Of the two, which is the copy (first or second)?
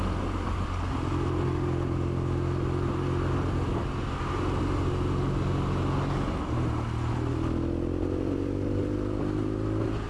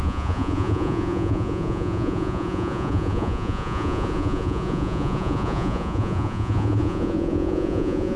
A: second